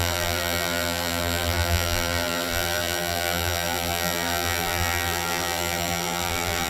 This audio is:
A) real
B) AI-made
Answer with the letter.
B